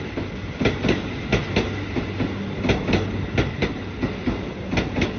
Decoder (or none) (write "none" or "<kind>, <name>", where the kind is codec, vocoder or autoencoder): none